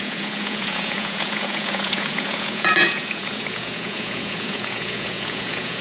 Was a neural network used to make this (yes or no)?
yes